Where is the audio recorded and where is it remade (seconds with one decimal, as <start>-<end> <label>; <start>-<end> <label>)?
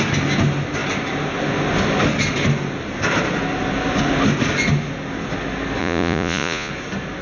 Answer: 0.0-5.8 recorded; 5.8-6.7 remade; 6.7-7.2 recorded